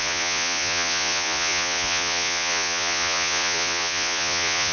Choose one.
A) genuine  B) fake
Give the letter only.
B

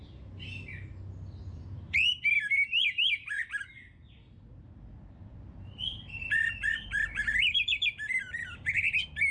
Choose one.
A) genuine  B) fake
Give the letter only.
A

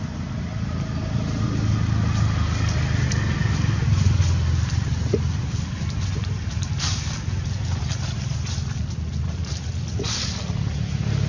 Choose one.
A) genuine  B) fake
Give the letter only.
A